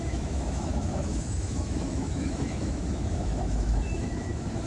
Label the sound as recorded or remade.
remade